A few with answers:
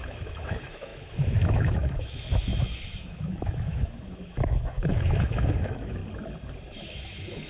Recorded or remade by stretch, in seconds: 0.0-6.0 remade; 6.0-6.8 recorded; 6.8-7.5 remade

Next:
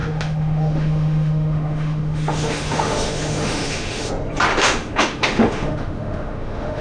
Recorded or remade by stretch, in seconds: 0.0-4.1 remade; 4.1-4.5 recorded; 4.5-6.8 remade